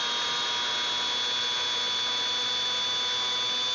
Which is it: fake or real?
real